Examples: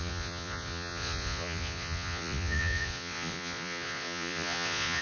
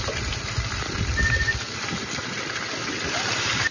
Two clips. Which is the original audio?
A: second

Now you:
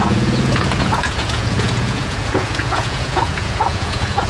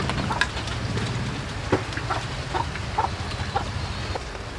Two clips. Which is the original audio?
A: second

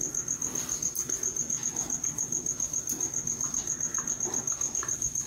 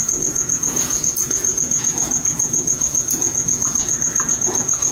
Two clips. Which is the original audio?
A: first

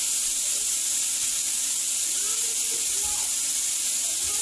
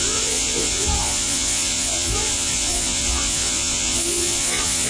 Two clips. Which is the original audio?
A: first